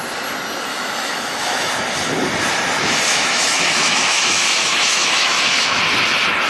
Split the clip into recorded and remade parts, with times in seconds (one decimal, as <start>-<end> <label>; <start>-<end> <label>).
0.0-0.7 recorded; 0.7-1.7 remade; 1.7-3.1 recorded; 3.1-5.8 remade; 5.8-6.5 recorded